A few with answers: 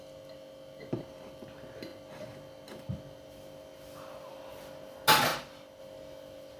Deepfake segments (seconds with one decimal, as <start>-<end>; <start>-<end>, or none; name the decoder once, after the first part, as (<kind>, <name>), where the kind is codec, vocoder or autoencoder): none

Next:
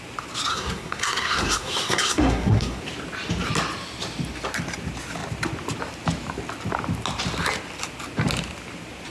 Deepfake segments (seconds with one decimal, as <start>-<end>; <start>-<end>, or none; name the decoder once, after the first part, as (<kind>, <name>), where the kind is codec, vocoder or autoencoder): 0.5-2.8 (codec, SNAC)

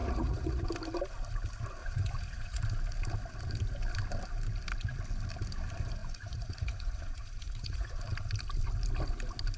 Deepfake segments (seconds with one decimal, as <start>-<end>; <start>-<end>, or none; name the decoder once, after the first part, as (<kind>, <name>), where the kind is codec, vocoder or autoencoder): 0.0-0.6 (vocoder, Vocos); 1.8-2.6; 6.0-8.0

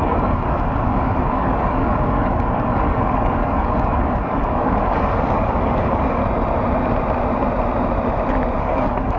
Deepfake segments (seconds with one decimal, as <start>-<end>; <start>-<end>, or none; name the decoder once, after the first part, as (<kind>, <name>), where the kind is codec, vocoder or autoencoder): 0.0-6.2 (codec, DAC); 8.6-9.2

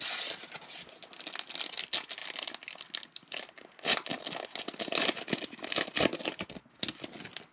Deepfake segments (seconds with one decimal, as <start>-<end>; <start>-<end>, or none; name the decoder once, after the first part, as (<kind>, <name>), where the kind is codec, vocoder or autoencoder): none